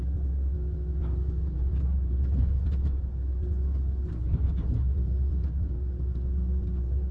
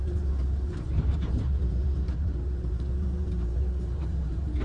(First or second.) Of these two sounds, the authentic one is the first